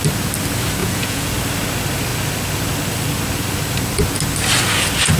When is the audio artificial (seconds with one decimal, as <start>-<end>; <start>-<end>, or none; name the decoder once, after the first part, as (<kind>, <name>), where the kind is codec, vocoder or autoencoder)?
0.8-1.3 (vocoder, Vocos)